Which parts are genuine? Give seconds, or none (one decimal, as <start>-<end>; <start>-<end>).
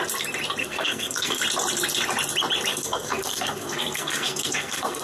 0.0-0.6; 1.4-2.7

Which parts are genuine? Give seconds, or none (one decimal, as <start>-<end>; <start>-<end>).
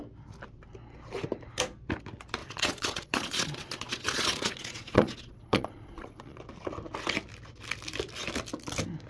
0.0-2.4; 6.4-9.1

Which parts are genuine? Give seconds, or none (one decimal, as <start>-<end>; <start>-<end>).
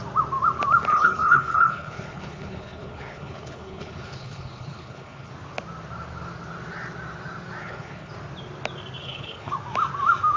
0.0-0.9; 5.3-7.6; 8.1-9.0; 9.5-10.4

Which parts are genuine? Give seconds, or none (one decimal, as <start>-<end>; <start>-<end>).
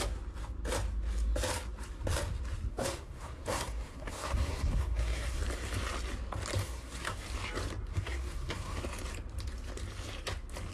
0.0-2.7; 5.4-6.6; 7.2-7.9; 8.8-10.7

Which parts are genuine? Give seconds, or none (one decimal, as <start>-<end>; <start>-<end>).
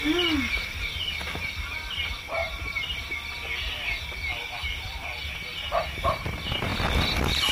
0.0-2.4; 3.0-4.4; 5.2-7.5